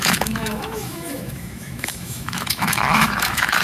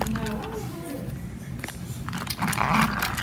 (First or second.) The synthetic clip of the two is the first